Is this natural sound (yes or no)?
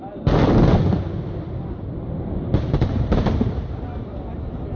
yes